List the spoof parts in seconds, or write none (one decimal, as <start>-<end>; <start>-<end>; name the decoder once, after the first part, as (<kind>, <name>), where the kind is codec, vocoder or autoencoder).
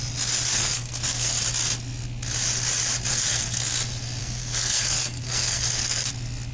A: 0.5-1.4 (codec, SNAC); 3.1-3.7; 4.2-6.1